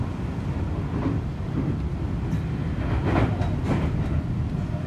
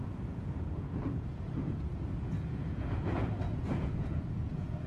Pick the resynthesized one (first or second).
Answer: second